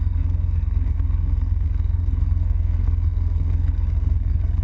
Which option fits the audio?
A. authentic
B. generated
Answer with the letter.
B